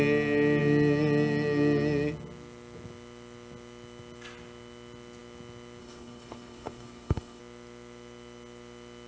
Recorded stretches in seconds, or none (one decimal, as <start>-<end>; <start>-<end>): 0.0-5.8; 7.4-9.1